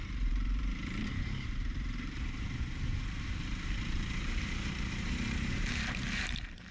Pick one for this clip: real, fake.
fake